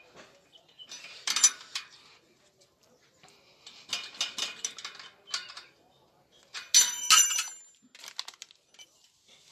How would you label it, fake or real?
real